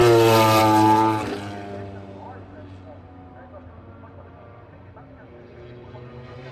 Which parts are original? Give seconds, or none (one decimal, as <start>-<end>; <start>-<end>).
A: 0.0-6.5